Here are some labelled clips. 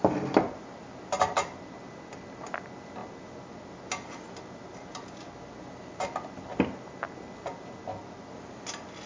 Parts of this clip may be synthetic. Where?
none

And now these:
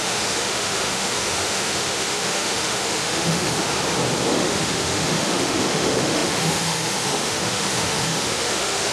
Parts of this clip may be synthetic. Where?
0.0-3.7; 4.3-8.9

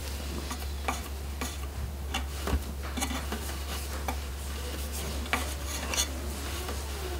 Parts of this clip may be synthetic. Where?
none

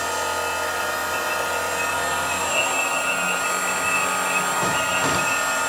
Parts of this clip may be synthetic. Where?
none